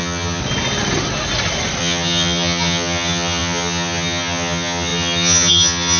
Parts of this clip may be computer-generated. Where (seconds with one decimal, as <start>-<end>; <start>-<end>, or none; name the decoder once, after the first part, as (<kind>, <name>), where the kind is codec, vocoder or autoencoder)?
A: 0.0-0.4 (vocoder, HiFi-GAN); 1.8-6.0